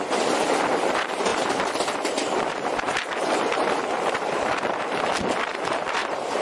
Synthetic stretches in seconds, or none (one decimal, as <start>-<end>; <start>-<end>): 1.3-5.1; 5.5-6.4